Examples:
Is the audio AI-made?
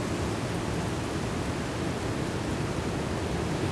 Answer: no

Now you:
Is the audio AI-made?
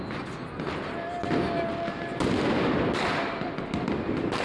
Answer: no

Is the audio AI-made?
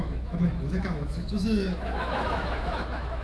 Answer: yes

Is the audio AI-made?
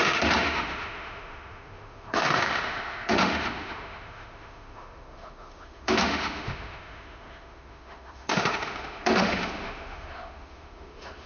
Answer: yes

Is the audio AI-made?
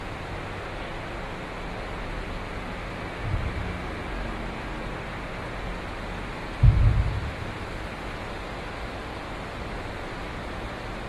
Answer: no